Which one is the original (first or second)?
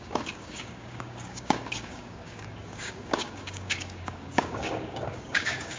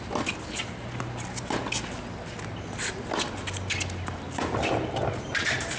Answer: second